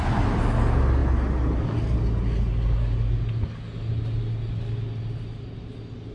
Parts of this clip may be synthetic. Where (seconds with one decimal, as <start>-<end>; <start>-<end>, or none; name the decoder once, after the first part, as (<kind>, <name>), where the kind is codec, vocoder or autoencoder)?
none